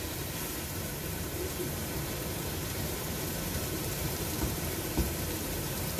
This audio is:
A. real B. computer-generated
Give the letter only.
B